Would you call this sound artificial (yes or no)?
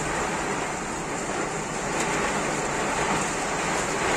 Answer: no